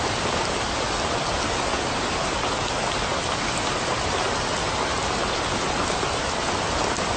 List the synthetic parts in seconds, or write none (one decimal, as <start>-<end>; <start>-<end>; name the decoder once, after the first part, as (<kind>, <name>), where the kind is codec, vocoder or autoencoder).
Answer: none